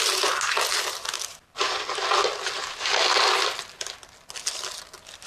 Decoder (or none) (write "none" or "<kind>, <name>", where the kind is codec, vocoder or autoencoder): none